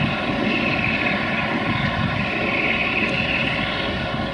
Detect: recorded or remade recorded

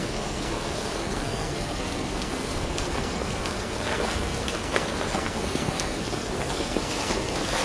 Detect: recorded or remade remade